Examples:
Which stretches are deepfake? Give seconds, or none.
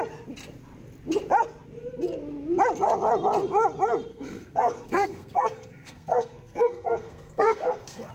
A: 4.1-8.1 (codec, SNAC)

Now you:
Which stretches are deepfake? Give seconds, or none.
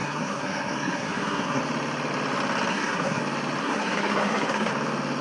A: 0.0-1.6 (codec, SNAC); 2.7-3.2; 3.6-4.7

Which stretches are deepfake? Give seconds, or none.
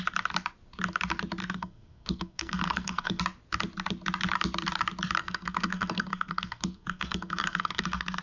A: 1.4-3.2 (codec, SNAC); 5.2-8.2